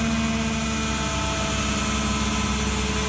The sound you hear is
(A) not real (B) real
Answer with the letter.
B